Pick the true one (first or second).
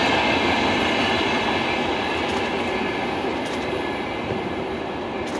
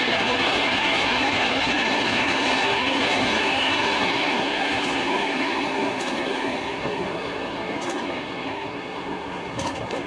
first